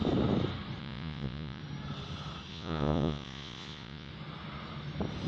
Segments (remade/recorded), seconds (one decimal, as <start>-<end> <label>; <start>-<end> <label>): 0.0-0.8 recorded; 0.8-1.6 remade; 1.6-2.5 recorded; 2.5-4.1 remade; 4.1-5.3 recorded